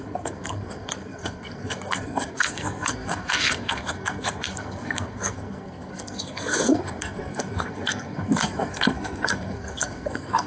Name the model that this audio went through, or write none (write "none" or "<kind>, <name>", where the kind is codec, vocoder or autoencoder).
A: codec, SNAC